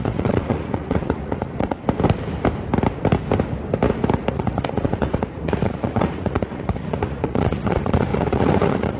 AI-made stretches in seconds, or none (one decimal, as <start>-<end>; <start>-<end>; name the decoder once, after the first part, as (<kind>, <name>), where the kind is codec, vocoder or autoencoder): 0.0-1.8 (vocoder, Vocos); 4.3-9.0